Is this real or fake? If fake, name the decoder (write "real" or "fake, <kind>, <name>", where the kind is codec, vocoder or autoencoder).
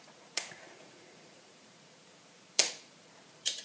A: fake, vocoder, Vocos